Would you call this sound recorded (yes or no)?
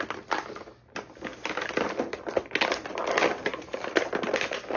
yes